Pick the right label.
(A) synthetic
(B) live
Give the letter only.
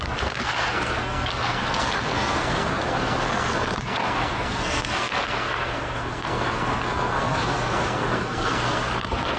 A